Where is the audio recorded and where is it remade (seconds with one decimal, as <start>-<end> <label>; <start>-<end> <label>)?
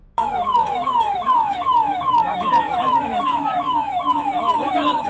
0.0-5.1 remade